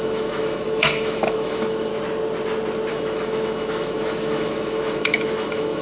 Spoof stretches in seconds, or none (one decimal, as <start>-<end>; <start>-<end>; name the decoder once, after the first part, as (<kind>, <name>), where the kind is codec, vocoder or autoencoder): 0.0-1.9 (autoencoder, DAC-VAE); 2.9-5.8